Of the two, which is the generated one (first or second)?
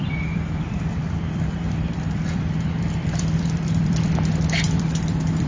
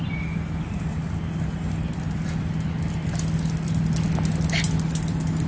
first